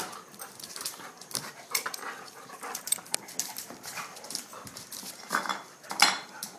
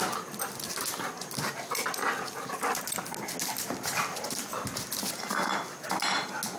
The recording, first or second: second